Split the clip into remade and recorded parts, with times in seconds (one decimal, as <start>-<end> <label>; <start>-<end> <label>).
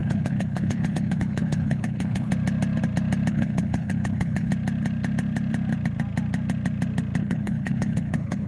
0.0-2.3 remade; 2.3-3.3 recorded; 3.3-4.5 remade; 4.5-7.2 recorded; 7.2-8.5 remade